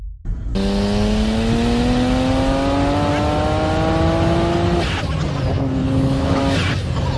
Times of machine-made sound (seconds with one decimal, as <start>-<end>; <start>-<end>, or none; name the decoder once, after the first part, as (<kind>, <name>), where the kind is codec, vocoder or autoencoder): 5.8-6.4 (codec, HILCodec)